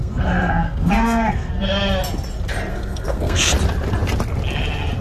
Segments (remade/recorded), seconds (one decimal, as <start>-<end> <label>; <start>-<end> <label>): 0.0-1.5 remade; 1.5-2.7 recorded; 2.7-3.5 remade; 3.5-5.0 recorded